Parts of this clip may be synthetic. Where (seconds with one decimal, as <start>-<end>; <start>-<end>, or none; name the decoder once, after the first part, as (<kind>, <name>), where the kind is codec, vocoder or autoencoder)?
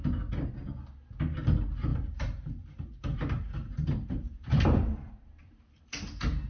1.9-5.8 (vocoder, BigVGAN v2)